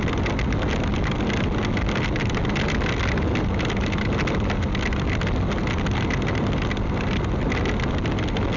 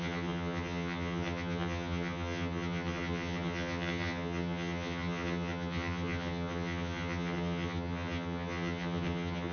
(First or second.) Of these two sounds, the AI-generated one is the second